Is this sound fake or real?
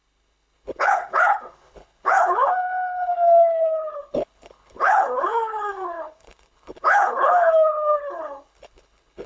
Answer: fake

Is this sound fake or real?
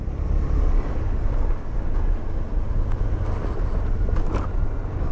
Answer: real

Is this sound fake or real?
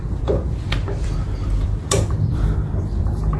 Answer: fake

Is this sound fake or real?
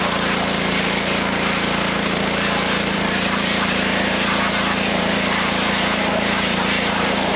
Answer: fake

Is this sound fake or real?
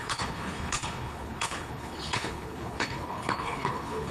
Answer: fake